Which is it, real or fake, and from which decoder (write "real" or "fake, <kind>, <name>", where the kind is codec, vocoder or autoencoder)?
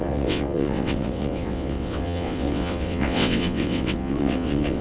fake, vocoder, WaveNeXt